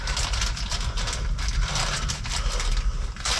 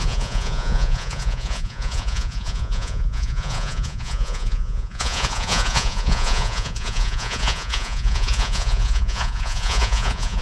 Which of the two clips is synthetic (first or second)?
second